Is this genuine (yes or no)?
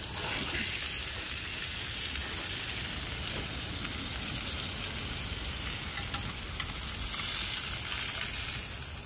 yes